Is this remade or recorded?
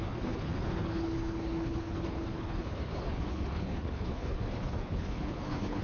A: remade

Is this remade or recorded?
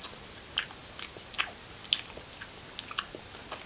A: recorded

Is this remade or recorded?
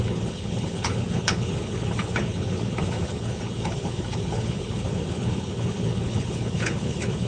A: remade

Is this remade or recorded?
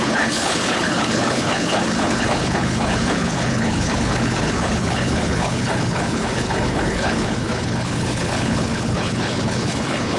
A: remade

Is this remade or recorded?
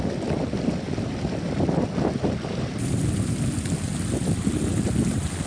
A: recorded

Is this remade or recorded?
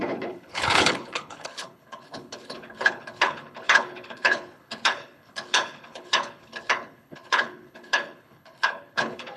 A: remade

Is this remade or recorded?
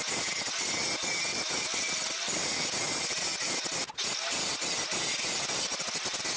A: recorded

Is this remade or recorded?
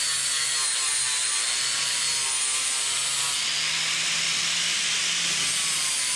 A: recorded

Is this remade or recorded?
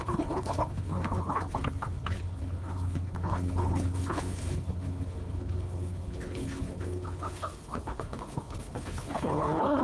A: remade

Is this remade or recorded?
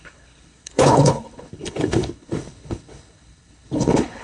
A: remade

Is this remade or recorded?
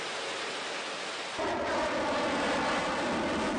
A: recorded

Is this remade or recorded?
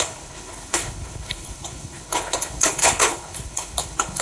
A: remade